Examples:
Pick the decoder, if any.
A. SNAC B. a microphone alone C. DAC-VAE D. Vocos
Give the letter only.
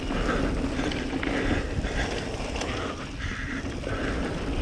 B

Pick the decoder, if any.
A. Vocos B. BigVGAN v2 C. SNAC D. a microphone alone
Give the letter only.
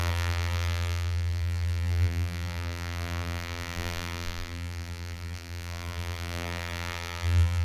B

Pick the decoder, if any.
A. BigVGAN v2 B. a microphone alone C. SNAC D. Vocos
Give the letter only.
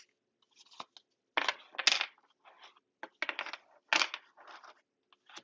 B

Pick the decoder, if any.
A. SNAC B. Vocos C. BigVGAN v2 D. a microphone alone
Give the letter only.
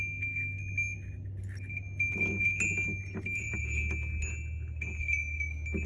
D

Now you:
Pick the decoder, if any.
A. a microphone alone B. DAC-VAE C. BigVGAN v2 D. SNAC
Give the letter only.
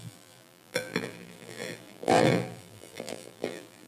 C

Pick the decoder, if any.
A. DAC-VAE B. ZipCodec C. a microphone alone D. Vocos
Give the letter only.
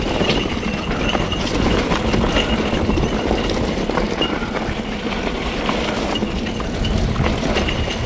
C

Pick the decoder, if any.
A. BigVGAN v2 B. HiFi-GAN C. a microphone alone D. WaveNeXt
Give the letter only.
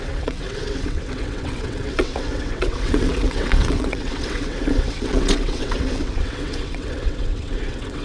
D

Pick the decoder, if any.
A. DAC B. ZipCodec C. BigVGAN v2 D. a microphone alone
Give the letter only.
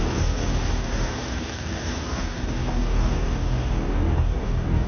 A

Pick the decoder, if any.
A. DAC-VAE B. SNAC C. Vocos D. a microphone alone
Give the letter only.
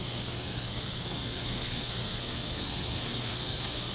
B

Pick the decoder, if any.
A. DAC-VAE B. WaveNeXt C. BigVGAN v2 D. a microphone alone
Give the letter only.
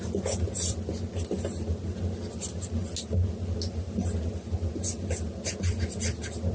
D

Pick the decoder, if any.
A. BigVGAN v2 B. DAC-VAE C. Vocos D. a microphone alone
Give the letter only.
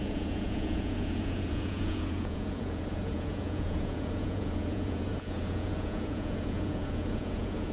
C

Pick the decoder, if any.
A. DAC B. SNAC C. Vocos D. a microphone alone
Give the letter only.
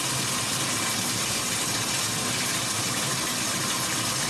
D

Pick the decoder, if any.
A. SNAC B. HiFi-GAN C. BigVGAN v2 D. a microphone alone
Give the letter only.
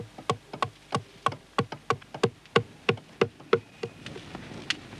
D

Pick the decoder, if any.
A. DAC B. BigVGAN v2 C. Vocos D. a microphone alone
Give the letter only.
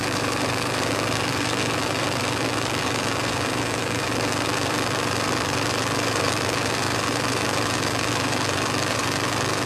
B